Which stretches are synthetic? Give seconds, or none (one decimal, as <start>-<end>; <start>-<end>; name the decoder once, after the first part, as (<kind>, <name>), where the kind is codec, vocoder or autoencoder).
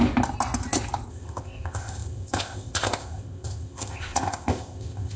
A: 1.1-5.2 (codec, ZipCodec)